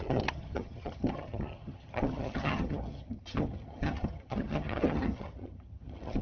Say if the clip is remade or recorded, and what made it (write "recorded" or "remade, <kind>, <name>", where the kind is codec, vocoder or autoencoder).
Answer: remade, vocoder, HiFi-GAN